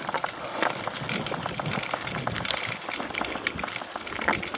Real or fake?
real